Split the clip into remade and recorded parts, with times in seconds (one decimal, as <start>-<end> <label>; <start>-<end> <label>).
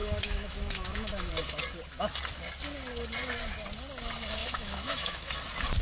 0.0-1.3 remade; 1.3-4.4 recorded; 4.4-5.3 remade; 5.3-5.8 recorded